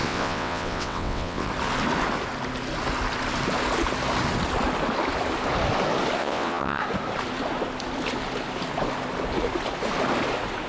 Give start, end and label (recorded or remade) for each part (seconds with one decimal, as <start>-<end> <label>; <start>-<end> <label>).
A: 0.0-1.5 remade; 1.5-6.2 recorded; 6.2-6.8 remade; 6.8-10.7 recorded